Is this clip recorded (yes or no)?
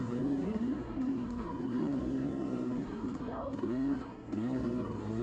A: no